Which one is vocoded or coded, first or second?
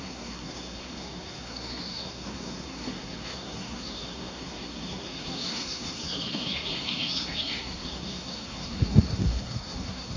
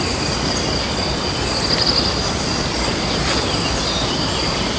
first